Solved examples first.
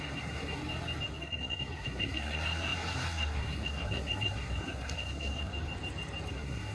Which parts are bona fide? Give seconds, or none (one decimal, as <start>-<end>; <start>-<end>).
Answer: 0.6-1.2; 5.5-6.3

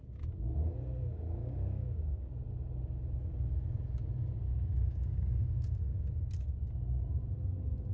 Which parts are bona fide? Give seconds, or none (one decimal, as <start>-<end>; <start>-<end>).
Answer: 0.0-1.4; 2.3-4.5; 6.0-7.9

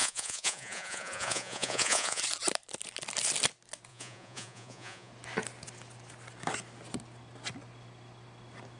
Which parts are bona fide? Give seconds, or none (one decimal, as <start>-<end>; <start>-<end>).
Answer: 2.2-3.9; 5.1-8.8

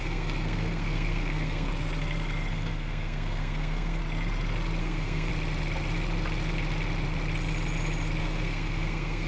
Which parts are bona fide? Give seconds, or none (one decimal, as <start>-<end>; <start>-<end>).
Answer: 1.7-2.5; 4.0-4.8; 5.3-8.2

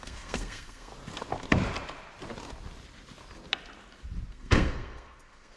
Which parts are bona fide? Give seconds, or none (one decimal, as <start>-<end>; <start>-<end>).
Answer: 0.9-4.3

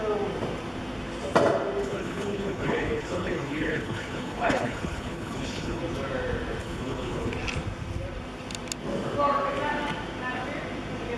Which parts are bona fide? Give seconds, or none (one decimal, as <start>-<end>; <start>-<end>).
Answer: 0.0-1.8; 5.8-6.6; 7.3-11.2